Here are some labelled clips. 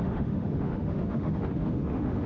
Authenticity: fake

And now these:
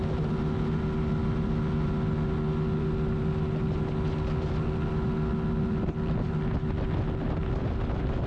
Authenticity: real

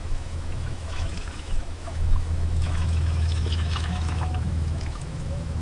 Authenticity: fake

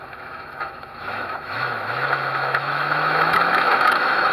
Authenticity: fake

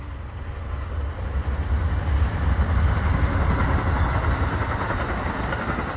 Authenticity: real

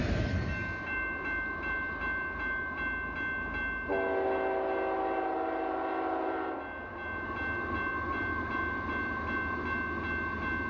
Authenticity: real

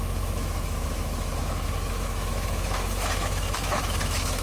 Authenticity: fake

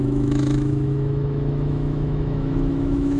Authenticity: fake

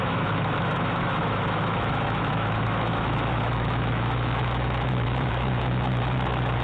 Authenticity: fake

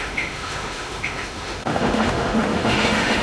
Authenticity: fake